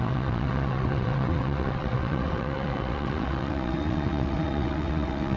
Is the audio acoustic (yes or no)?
no